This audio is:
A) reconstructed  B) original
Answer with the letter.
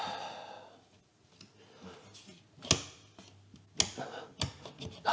B